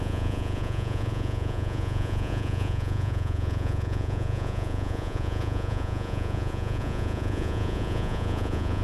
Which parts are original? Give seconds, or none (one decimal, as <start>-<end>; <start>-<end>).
none